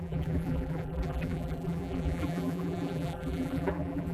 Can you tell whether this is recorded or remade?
remade